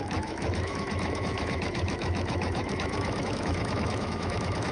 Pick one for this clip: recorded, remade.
remade